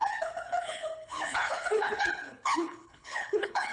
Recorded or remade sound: remade